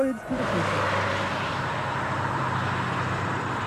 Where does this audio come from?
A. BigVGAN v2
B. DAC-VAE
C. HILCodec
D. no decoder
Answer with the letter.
D